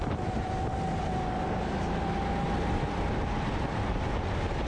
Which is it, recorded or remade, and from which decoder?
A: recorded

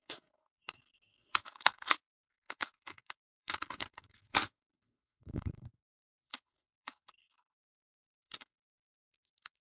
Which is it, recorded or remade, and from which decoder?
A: remade, codec, SNAC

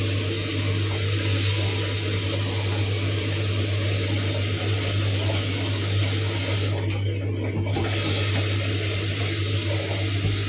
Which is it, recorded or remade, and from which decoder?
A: recorded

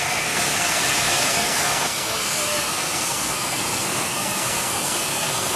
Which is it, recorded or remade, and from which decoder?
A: remade, codec, SNAC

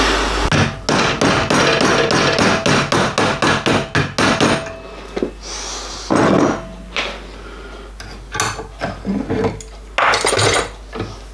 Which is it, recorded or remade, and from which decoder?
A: recorded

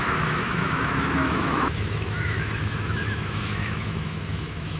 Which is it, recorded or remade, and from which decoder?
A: remade, autoencoder, DAC-VAE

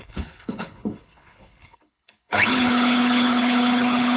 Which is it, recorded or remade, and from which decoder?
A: remade, codec, HILCodec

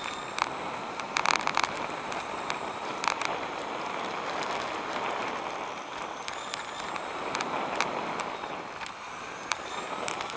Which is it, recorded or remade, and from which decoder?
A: recorded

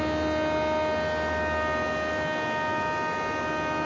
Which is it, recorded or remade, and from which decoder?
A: recorded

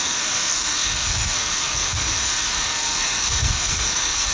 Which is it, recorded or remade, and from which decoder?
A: remade, codec, SNAC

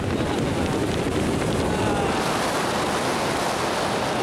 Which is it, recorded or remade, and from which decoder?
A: recorded